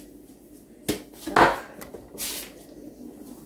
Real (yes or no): yes